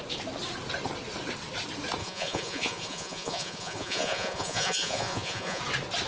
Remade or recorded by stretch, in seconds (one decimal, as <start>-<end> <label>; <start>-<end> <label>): 0.0-2.0 recorded; 2.0-5.6 remade; 5.6-6.1 recorded

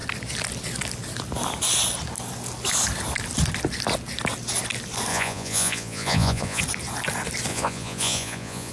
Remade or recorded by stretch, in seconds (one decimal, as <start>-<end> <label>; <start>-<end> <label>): 0.0-5.1 recorded; 5.1-6.6 remade; 6.6-7.5 recorded; 7.5-8.7 remade

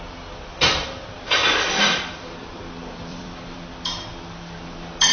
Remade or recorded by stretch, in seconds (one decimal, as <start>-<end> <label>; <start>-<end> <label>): 0.0-0.5 recorded; 0.5-2.6 remade; 2.6-3.1 recorded; 3.1-3.6 remade; 3.6-5.1 recorded

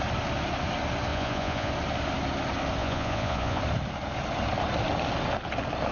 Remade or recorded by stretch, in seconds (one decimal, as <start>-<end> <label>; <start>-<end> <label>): 0.0-1.1 recorded; 1.1-1.7 remade; 1.7-2.8 recorded; 2.8-3.6 remade; 3.6-5.9 recorded

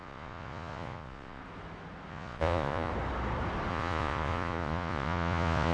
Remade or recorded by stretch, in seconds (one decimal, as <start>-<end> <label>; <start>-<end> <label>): 0.0-1.4 remade; 1.4-2.1 recorded; 2.1-2.9 remade; 2.9-3.7 recorded; 3.7-5.7 remade

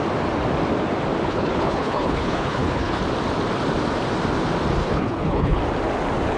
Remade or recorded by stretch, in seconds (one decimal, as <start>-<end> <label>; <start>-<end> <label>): 0.0-1.3 recorded; 1.3-3.0 remade; 3.0-4.8 recorded; 4.8-5.6 remade; 5.6-6.4 recorded

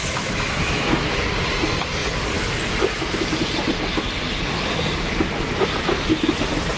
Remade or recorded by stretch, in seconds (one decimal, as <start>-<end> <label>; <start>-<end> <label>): 0.0-1.2 remade; 1.2-6.8 recorded